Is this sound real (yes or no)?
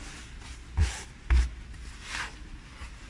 yes